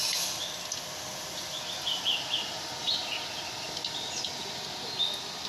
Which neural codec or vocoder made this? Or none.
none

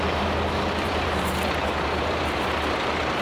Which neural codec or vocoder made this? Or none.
vocoder, BigVGAN v2